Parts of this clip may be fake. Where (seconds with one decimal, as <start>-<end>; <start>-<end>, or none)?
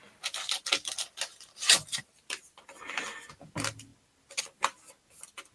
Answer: 1.3-2.2